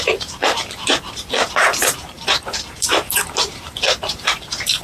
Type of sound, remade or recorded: remade